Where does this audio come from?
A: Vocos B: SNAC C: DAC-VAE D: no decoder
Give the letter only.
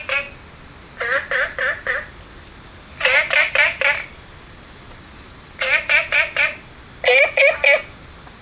D